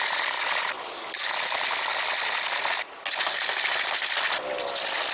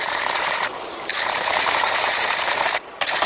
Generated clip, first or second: second